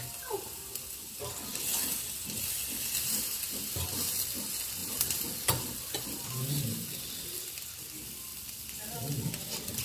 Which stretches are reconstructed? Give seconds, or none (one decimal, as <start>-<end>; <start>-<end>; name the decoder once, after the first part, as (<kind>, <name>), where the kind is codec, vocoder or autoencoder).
none